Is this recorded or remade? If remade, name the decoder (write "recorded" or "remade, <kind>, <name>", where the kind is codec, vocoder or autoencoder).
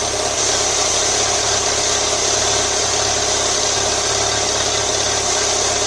recorded